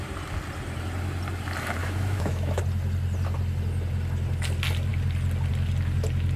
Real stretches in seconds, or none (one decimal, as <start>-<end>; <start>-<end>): 0.0-1.8; 2.6-6.4